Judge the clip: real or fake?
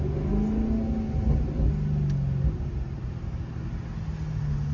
real